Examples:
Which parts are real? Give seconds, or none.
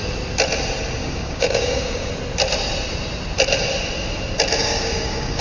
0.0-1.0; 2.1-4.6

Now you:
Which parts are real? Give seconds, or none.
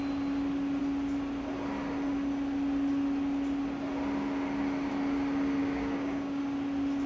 0.0-5.6; 6.4-7.1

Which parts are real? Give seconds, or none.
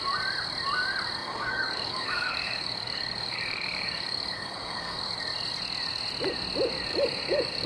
0.0-1.2; 5.0-6.9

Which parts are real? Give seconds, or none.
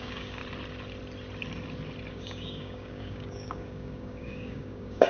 0.4-2.1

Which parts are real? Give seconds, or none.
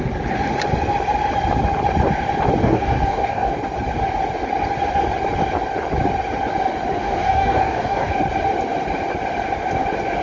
0.0-2.6; 3.6-7.0; 8.1-10.2